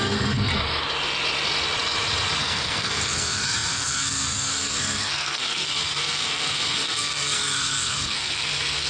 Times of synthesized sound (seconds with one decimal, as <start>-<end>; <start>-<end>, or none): 0.0-0.5; 2.4-8.9